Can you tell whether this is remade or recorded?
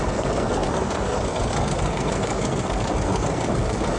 remade